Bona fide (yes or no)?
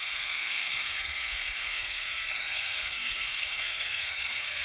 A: no